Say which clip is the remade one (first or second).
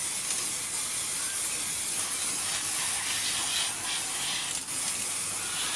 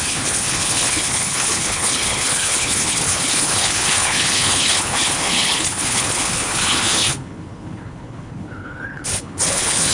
second